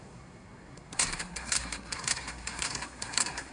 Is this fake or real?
fake